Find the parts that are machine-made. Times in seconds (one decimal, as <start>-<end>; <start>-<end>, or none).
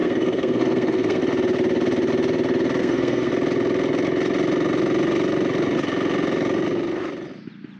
0.0-1.2; 2.8-3.3